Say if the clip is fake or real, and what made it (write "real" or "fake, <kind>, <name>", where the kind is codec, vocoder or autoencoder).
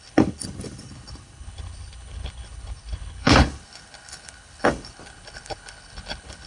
fake, codec, HILCodec